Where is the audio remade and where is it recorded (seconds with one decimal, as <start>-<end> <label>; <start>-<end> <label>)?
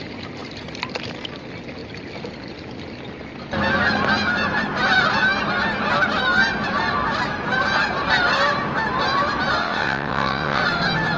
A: 0.0-9.6 recorded; 9.6-10.6 remade; 10.6-11.2 recorded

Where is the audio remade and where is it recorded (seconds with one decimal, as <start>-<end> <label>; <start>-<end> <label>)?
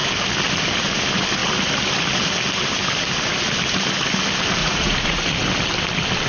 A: 0.0-4.6 recorded; 4.6-5.2 remade; 5.2-6.3 recorded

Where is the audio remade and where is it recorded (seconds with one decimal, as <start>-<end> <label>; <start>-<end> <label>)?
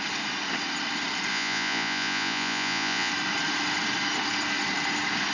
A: 0.0-1.3 recorded; 1.3-3.1 remade; 3.1-5.3 recorded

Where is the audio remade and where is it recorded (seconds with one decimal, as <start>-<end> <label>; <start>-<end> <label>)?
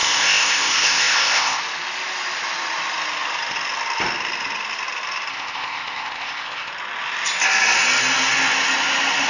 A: 0.0-1.6 remade; 1.6-5.3 recorded; 5.3-6.7 remade; 6.7-9.3 recorded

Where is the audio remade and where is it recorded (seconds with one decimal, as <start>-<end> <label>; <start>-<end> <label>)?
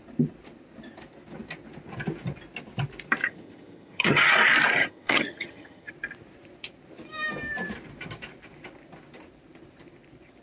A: 0.0-3.2 recorded; 3.2-4.3 remade; 4.3-4.8 recorded; 4.8-5.9 remade; 5.9-10.4 recorded